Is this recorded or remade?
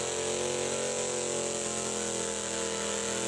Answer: recorded